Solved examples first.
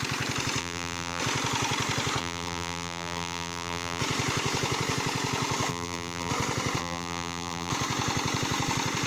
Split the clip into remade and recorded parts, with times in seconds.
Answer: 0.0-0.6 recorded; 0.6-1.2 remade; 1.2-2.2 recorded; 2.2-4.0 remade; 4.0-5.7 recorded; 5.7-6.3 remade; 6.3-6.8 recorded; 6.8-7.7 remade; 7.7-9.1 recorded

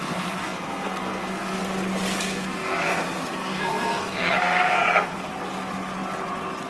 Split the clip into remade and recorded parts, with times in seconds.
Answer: 0.0-1.6 remade; 1.6-2.2 recorded; 2.2-5.3 remade; 5.3-6.7 recorded

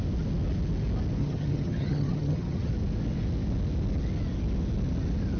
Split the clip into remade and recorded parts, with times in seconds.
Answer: 0.0-1.2 recorded; 1.2-2.7 remade; 2.7-5.4 recorded